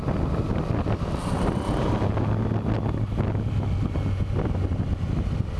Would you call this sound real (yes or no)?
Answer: yes